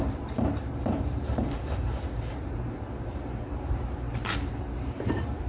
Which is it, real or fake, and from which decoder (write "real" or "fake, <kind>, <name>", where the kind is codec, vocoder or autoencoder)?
fake, vocoder, BigVGAN v2